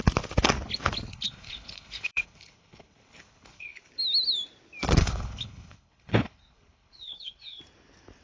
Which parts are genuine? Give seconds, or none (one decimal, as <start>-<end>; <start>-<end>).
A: 0.0-1.1; 3.9-5.0; 7.6-8.2